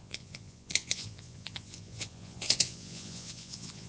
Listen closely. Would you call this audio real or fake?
fake